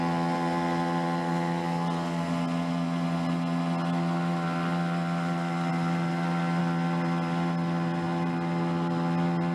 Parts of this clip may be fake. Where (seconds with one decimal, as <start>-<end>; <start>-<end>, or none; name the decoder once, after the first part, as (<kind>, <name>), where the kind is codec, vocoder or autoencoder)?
none